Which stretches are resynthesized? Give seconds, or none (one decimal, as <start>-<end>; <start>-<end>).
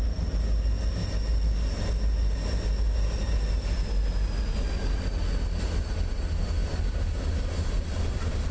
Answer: none